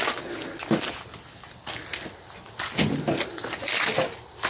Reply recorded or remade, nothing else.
recorded